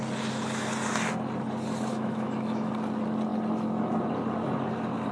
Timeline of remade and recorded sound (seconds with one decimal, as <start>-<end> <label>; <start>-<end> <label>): 0.0-1.9 recorded; 1.9-2.7 remade; 2.7-5.1 recorded